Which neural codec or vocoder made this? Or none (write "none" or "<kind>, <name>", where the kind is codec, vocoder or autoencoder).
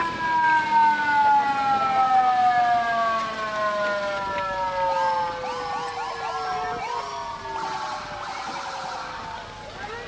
none